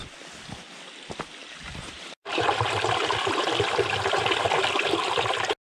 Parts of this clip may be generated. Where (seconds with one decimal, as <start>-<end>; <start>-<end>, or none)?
1.4-2.6